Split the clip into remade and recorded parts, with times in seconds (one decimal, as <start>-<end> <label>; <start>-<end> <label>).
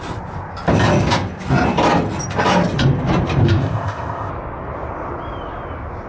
0.0-3.6 recorded; 3.6-4.3 remade; 4.3-6.1 recorded